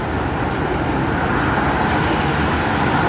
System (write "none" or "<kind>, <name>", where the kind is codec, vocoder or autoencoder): none